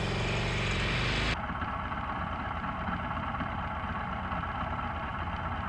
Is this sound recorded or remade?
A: recorded